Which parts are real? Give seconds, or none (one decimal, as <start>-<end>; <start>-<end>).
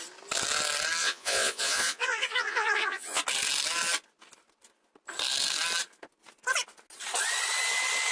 0.0-1.0; 3.2-8.1